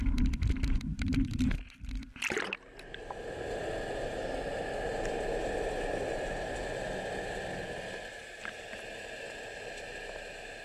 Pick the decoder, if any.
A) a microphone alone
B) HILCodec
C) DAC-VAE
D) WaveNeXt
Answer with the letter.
A